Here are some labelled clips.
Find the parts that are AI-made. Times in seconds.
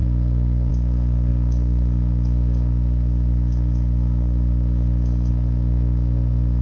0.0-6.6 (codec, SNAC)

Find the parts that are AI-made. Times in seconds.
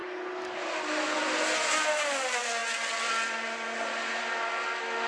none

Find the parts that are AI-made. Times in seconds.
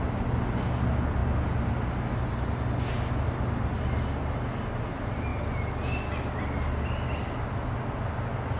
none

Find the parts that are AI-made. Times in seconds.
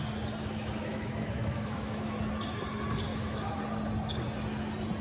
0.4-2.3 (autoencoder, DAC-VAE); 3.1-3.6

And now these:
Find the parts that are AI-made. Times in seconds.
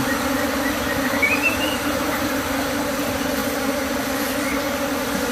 1.2-2.4 (vocoder, BigVGAN v2); 3.4-3.9